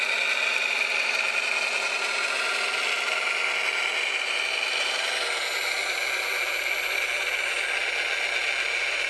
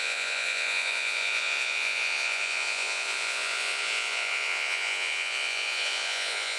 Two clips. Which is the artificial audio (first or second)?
second